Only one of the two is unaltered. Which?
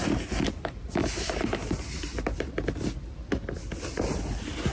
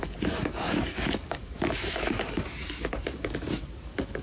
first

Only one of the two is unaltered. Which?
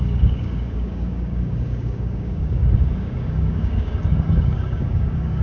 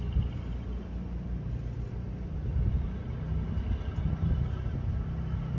second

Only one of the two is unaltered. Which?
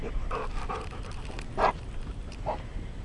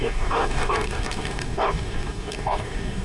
first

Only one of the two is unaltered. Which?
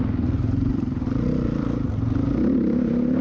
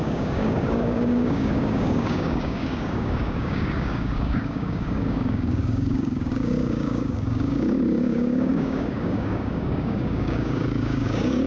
first